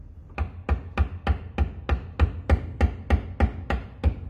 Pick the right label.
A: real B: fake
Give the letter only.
A